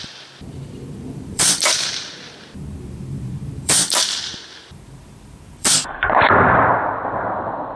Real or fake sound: fake